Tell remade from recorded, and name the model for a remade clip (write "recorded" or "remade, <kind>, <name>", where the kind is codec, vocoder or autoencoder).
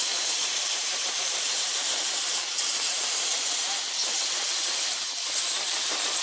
remade, vocoder, BigVGAN v2